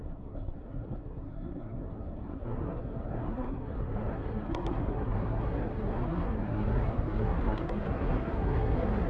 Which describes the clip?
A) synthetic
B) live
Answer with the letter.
A